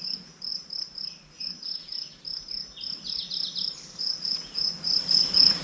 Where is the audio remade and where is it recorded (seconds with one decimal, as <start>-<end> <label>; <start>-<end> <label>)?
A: 0.0-0.5 remade; 0.5-1.4 recorded; 1.4-1.9 remade; 1.9-4.0 recorded; 4.0-5.6 remade